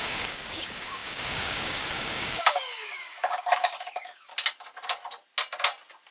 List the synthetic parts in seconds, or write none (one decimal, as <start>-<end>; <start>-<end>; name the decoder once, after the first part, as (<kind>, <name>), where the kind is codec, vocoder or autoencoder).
0.0-4.3 (codec, DAC)